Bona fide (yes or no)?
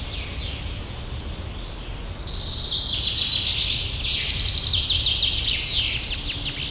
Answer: yes